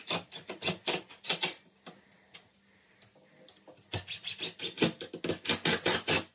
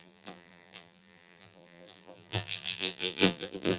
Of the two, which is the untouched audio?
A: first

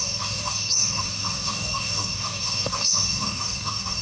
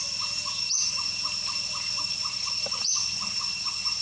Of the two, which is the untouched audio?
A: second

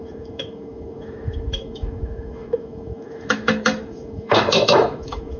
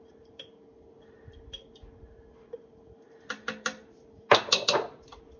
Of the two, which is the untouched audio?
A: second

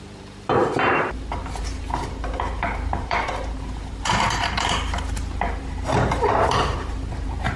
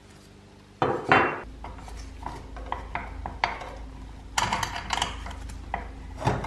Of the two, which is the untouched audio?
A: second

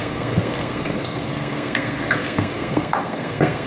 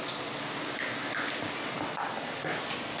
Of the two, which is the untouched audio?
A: second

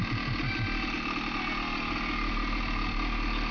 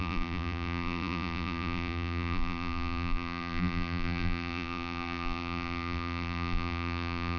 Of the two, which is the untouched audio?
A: first